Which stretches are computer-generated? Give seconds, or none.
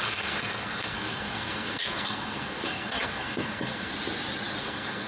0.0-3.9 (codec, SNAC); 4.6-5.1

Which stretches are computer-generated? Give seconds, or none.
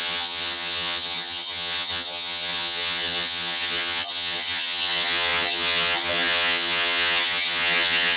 0.0-8.2 (vocoder, HiFi-GAN)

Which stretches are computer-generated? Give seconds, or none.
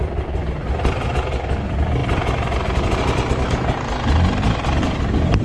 none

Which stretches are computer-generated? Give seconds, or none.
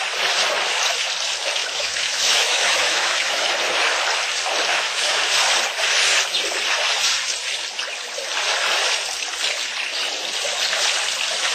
1.6-3.5 (autoencoder, DAC-VAE); 4.7-5.2